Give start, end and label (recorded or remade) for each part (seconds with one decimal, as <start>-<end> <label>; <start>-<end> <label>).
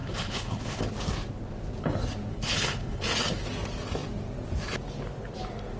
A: 0.0-0.8 remade; 0.8-2.3 recorded; 2.3-3.0 remade; 3.0-5.8 recorded